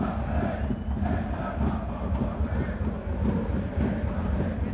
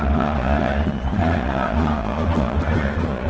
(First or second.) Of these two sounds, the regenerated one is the second